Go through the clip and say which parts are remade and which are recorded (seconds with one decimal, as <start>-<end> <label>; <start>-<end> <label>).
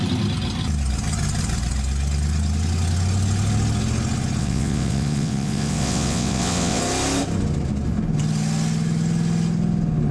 0.0-4.4 recorded; 4.4-6.8 remade; 6.8-10.1 recorded